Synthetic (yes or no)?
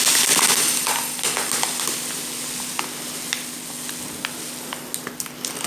no